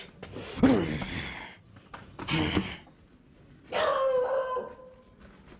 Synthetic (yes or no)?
no